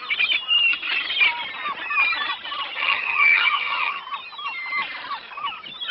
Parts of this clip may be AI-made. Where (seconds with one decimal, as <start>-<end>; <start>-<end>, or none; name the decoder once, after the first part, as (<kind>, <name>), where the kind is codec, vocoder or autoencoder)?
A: 2.8-4.0 (vocoder, HiFi-GAN)